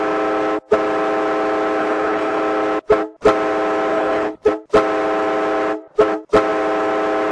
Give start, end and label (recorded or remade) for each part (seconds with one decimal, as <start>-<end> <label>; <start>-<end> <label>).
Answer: 0.0-1.8 recorded; 1.8-2.4 remade; 2.4-3.9 recorded; 3.9-4.5 remade; 4.5-7.3 recorded